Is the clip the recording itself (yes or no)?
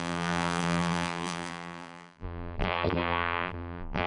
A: no